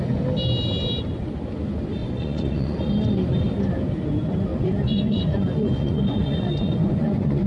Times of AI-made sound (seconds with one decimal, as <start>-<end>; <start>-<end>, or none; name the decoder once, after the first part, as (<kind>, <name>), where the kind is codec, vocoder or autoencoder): 2.0-2.9 (vocoder, Vocos); 4.5-7.5